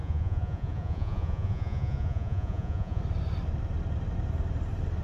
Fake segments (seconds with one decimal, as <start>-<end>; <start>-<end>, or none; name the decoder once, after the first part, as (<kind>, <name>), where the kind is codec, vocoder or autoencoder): 0.0-3.0 (vocoder, Vocos)